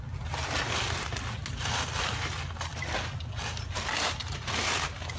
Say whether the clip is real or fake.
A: real